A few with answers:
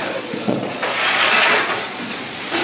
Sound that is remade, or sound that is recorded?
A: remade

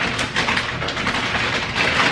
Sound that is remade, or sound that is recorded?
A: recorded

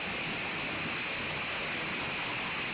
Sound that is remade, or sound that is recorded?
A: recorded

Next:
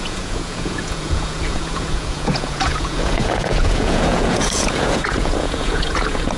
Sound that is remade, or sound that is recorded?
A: remade